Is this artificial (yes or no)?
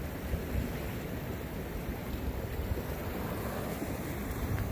yes